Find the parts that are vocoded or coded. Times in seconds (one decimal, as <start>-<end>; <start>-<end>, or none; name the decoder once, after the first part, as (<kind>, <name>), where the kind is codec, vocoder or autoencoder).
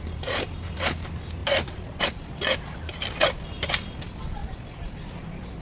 0.0-4.4 (vocoder, BigVGAN v2)